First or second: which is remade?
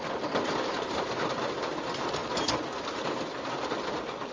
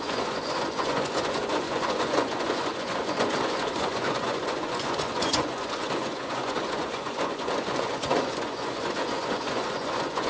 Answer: second